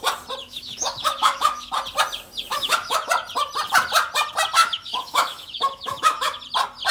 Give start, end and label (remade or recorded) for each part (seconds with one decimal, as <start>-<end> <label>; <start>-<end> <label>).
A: 0.0-0.4 recorded; 0.4-1.7 remade; 1.7-2.5 recorded; 2.5-3.1 remade; 3.1-4.6 recorded; 4.6-6.4 remade; 6.4-6.9 recorded